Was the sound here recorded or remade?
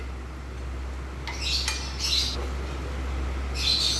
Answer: recorded